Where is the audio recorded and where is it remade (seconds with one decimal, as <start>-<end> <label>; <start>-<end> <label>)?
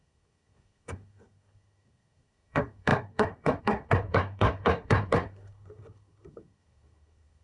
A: 0.0-7.4 remade